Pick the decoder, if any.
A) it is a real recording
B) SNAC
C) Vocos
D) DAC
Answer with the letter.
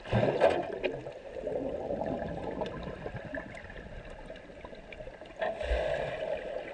A